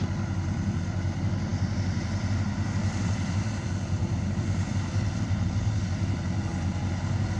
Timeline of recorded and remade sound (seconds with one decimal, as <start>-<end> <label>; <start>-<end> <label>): 0.0-6.5 remade; 6.5-7.4 recorded